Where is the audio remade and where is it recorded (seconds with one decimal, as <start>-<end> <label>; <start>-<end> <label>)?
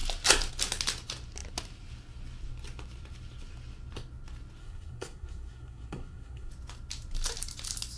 0.0-4.6 recorded; 4.6-6.5 remade; 6.5-8.0 recorded